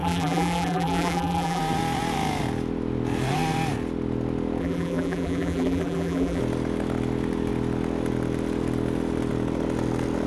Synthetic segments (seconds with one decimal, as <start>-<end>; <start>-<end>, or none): 0.0-1.6; 4.6-6.4